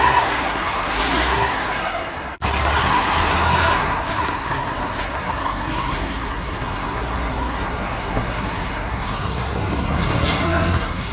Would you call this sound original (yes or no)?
no